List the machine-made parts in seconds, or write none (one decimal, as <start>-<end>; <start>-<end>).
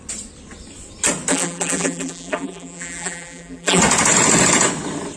1.3-3.8